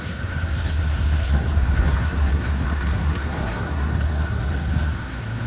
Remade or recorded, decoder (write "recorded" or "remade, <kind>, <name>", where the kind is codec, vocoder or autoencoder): remade, codec, SNAC